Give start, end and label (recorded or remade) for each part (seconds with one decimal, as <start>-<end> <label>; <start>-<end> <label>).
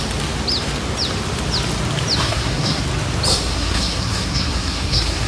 0.0-2.2 recorded; 2.2-2.8 remade; 2.8-3.3 recorded; 3.3-5.3 remade